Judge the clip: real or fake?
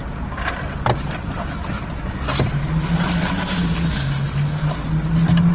real